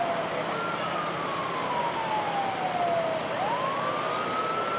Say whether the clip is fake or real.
real